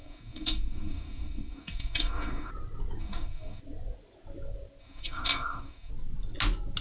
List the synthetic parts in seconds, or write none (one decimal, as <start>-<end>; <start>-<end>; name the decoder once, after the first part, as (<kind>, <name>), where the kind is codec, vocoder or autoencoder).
0.0-2.5 (codec, DAC); 3.0-3.6; 4.8-5.9